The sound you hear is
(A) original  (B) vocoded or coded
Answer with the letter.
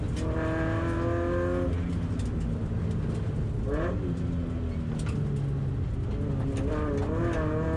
A